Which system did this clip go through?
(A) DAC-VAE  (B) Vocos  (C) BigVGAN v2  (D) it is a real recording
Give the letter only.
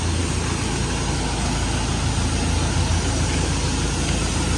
D